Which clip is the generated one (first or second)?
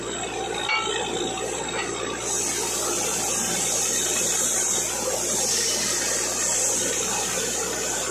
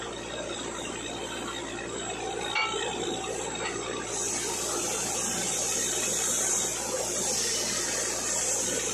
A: second